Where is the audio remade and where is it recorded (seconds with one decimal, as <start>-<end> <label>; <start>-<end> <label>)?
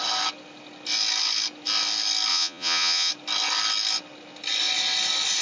0.0-2.3 recorded; 2.3-3.1 remade; 3.1-5.4 recorded